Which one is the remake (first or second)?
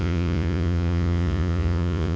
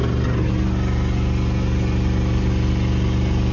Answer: first